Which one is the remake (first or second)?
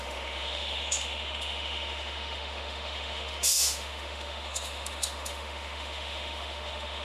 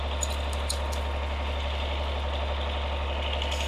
first